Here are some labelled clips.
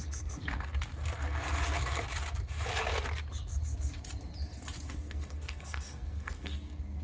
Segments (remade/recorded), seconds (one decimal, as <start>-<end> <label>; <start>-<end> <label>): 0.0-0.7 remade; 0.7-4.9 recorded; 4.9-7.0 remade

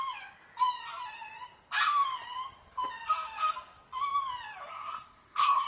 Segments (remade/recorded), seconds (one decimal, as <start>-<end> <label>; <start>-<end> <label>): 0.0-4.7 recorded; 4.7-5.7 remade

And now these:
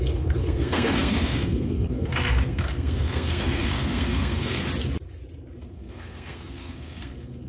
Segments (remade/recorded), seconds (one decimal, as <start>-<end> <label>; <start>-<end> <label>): 0.0-4.6 remade; 4.6-5.7 recorded; 5.7-7.5 remade